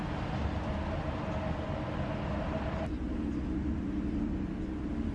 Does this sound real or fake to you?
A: real